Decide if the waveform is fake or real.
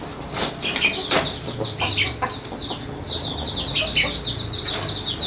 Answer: real